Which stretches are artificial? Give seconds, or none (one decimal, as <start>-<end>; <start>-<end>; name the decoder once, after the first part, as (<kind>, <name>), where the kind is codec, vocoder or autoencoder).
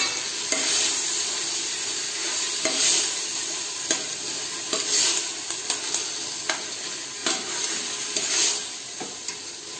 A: none